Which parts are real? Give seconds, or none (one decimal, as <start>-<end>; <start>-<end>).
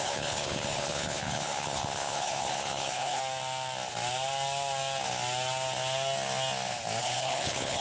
3.2-7.0